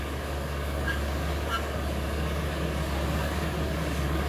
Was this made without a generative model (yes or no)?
no